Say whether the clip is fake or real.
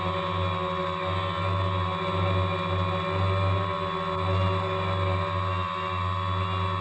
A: real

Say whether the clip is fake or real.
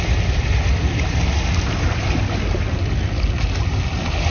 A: real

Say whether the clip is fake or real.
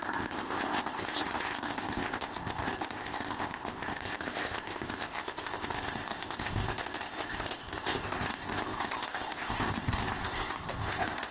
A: fake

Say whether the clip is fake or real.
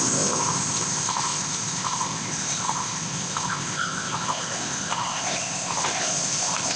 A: fake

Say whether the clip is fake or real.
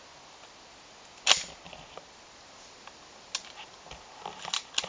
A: real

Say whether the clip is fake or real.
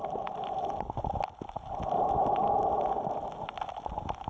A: real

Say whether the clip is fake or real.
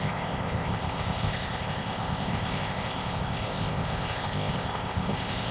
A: fake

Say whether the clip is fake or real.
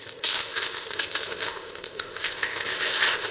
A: fake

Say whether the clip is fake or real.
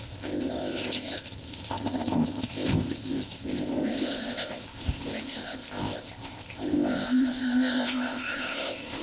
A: fake